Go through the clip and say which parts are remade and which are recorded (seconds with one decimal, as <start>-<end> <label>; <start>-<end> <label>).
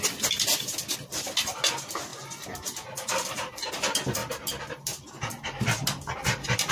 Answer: 0.0-6.7 recorded